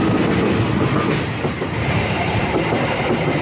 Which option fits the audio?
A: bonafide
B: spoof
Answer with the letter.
A